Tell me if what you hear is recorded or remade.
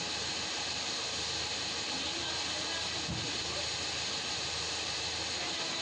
recorded